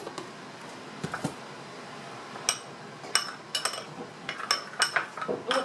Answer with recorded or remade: recorded